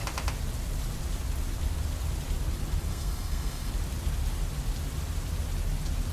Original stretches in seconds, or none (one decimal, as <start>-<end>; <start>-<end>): 0.0-2.9; 3.7-6.1